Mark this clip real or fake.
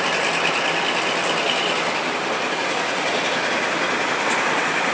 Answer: real